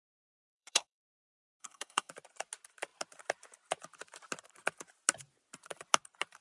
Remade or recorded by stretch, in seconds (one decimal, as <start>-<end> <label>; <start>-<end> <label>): 0.0-0.4 recorded; 0.4-2.1 remade; 2.1-6.4 recorded